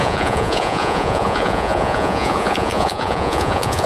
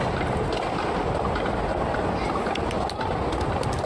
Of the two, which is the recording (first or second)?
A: second